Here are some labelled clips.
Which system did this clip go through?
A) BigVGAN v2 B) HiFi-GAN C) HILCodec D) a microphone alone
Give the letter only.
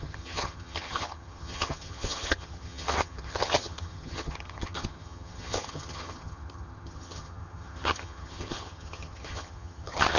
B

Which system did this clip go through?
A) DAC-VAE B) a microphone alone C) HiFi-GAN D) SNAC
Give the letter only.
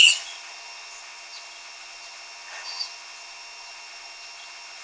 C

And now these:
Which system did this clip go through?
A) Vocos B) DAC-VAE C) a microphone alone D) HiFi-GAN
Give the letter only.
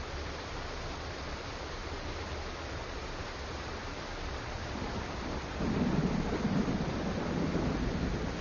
C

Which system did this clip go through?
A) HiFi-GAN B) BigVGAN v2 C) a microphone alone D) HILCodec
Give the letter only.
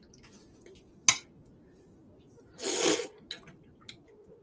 C